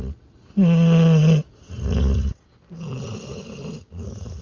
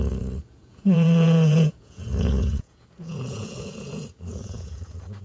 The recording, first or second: first